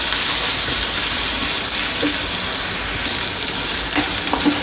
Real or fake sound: real